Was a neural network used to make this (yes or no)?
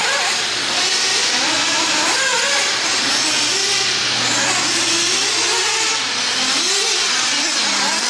no